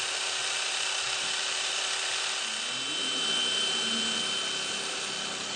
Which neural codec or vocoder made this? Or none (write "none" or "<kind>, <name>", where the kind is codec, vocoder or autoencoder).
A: none